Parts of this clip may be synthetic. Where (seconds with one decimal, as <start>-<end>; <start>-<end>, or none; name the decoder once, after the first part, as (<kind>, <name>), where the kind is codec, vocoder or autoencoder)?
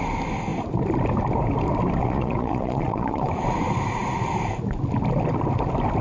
2.0-3.3 (vocoder, Vocos)